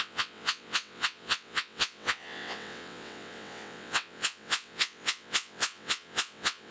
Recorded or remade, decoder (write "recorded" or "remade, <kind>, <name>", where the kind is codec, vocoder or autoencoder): remade, vocoder, WaveNeXt